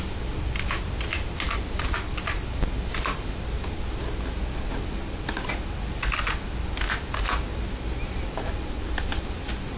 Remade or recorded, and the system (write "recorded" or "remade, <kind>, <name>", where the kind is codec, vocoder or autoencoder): recorded